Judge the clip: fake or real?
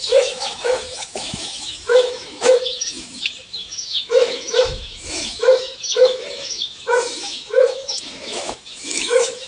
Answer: fake